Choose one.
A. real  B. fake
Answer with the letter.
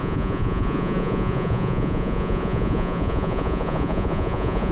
B